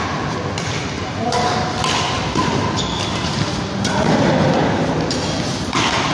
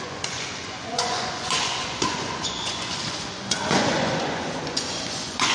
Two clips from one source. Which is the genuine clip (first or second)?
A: first